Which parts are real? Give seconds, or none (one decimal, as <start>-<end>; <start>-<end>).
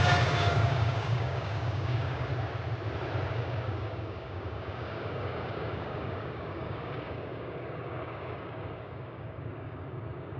2.3-3.3